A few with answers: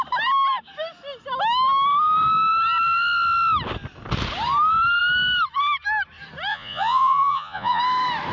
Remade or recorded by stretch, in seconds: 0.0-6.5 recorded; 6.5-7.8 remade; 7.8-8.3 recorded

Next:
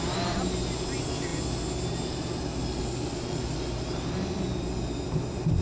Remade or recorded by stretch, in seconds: 0.0-5.6 recorded

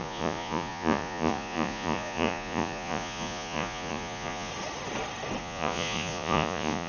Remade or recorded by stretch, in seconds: 0.0-4.5 remade; 4.5-5.4 recorded; 5.4-6.9 remade

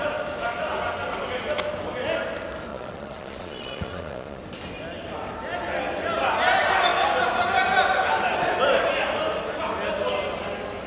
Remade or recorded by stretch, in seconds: 0.0-2.7 recorded; 2.7-4.4 remade; 4.4-10.9 recorded

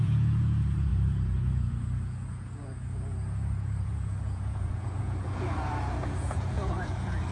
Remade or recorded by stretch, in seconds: 0.0-7.3 remade

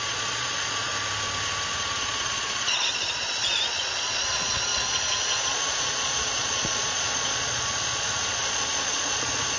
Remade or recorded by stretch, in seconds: 0.0-0.9 remade; 0.9-1.7 recorded; 1.7-9.6 remade

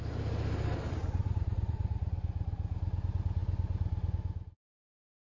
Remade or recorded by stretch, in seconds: 0.0-1.2 recorded; 1.2-2.1 remade; 2.1-5.3 recorded